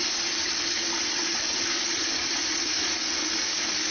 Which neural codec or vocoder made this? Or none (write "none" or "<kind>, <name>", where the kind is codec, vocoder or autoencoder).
vocoder, BigVGAN v2